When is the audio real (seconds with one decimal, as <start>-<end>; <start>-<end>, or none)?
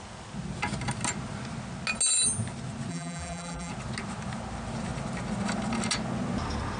0.0-2.9; 3.7-6.8